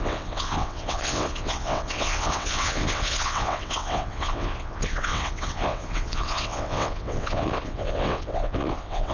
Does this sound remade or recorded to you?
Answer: remade